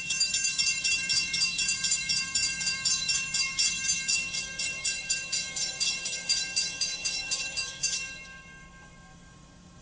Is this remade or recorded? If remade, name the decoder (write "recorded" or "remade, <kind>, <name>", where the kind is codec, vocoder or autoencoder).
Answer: remade, autoencoder, DAC-VAE